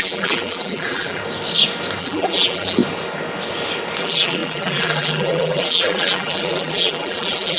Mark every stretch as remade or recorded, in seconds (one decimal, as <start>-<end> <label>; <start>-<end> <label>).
0.0-1.2 remade; 1.2-2.0 recorded; 2.0-2.8 remade; 2.8-4.0 recorded; 4.0-7.6 remade